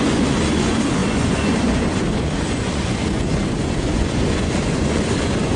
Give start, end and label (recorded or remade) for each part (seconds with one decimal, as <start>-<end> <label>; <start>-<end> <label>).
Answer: 0.0-5.6 remade